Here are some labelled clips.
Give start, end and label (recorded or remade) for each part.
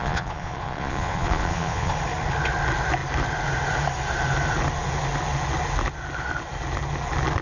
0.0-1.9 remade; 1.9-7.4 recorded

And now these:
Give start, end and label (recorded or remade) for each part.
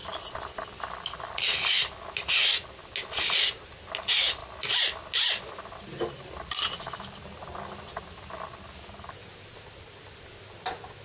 0.0-11.0 recorded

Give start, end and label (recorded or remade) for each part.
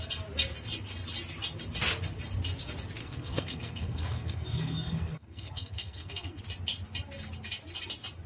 0.0-3.0 recorded; 3.0-6.4 remade; 6.4-8.3 recorded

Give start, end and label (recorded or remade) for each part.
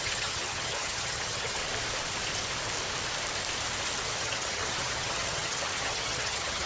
0.0-1.6 remade; 1.6-4.2 recorded; 4.2-6.7 remade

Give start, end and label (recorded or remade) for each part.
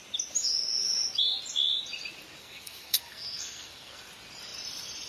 0.0-2.4 recorded; 2.4-4.1 remade; 4.1-5.1 recorded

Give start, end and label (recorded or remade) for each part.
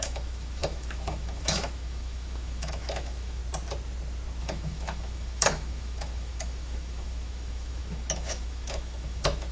0.0-3.4 remade; 3.4-4.4 recorded; 4.4-9.5 remade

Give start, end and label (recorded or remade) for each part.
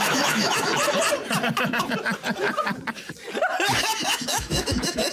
0.0-0.7 remade; 0.7-3.8 recorded; 3.8-5.1 remade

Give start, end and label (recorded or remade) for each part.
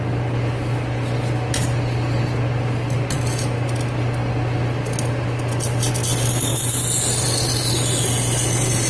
0.0-8.9 recorded